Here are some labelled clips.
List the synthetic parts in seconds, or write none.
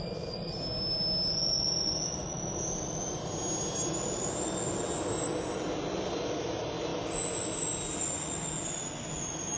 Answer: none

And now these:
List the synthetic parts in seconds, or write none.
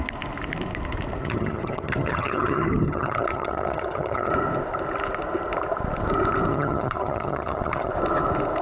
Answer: 1.2-4.3 (vocoder, HiFi-GAN); 6.5-7.9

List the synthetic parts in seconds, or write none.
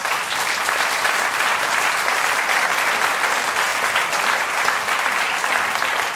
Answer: none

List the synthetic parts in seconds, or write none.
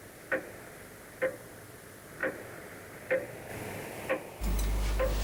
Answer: 2.2-2.8 (vocoder, BigVGAN v2)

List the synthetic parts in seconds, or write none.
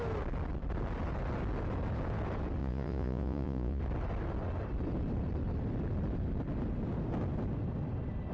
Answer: 2.6-3.8 (vocoder, Vocos)